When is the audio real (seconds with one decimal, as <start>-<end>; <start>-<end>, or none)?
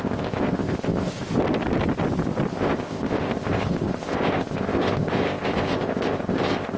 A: 1.2-2.5